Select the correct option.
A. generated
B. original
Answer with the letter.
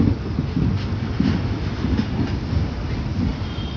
B